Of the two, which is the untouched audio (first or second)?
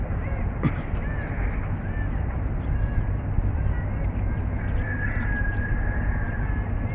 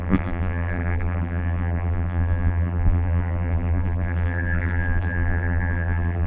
first